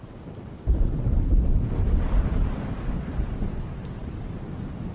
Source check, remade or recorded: recorded